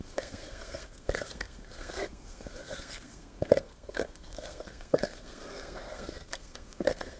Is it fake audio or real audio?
fake